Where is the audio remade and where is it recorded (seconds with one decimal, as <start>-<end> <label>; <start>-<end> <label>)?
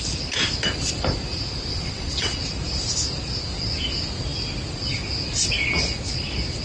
0.0-1.7 recorded; 1.7-2.4 remade; 2.4-6.6 recorded